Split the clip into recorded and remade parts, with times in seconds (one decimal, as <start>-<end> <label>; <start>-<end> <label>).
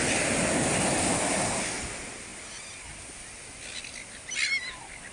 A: 0.0-5.1 recorded